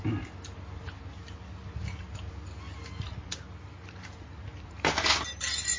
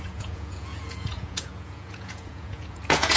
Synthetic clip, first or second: second